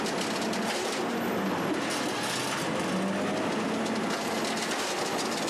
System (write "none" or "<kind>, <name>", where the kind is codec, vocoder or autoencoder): none